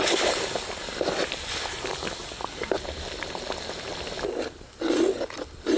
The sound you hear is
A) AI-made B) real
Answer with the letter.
B